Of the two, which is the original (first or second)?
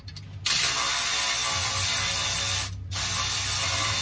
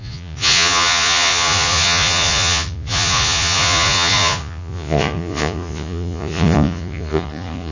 first